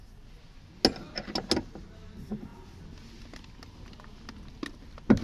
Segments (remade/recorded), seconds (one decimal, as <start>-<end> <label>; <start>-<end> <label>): 0.0-5.2 recorded